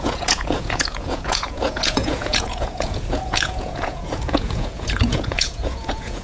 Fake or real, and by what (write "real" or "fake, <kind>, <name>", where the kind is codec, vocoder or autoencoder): fake, vocoder, Vocos